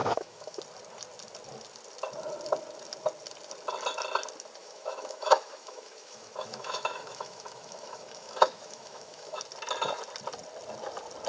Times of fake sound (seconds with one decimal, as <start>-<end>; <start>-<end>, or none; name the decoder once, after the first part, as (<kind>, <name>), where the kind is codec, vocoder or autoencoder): 0.0-0.6 (autoencoder, DAC-VAE); 4.6-9.4